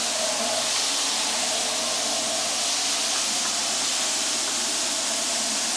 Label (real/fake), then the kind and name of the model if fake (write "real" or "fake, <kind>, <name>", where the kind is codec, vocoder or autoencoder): real